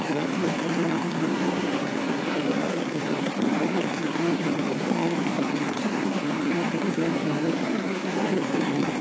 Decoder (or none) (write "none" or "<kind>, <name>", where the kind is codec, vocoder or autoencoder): codec, SNAC